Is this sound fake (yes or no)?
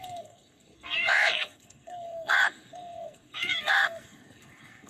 yes